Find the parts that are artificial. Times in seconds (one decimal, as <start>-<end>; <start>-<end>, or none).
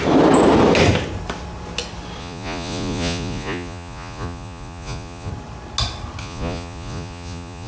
2.2-5.3; 6.2-7.7